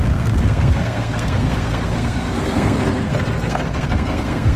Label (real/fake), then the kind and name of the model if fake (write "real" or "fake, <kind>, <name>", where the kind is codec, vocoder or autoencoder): fake, codec, SNAC